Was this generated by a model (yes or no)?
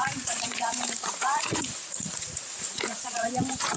yes